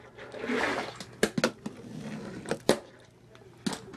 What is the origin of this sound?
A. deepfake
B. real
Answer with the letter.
B